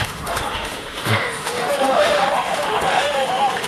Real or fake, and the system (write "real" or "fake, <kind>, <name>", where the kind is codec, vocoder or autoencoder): fake, autoencoder, DAC-VAE